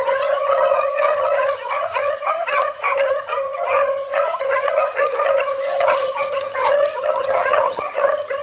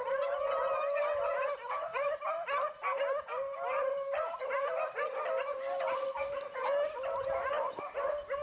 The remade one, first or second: first